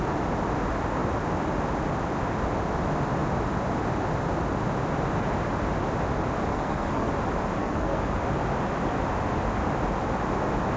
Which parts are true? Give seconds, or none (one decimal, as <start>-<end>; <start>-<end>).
0.0-6.5; 7.1-7.6; 8.2-10.8